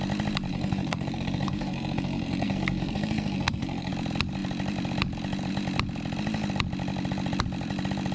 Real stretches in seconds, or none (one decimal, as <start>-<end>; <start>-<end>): 0.0-0.5; 3.9-8.1